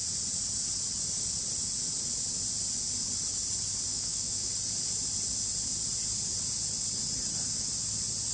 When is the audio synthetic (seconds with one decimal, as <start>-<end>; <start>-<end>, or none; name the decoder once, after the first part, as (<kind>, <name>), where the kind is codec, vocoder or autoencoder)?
3.9-4.5 (autoencoder, DAC-VAE)